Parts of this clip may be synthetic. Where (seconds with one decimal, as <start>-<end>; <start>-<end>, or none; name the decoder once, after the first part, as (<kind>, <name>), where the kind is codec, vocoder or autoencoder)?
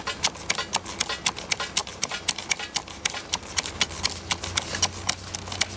1.8-2.4 (vocoder, BigVGAN v2); 2.8-3.7